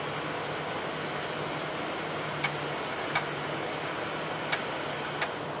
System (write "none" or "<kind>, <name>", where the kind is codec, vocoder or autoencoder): none